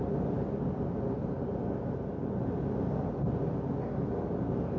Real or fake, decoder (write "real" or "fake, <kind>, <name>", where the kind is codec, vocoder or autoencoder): real